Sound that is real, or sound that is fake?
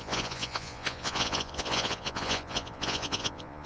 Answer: fake